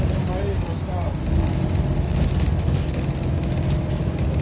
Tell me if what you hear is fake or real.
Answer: real